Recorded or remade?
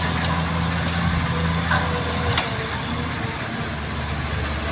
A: recorded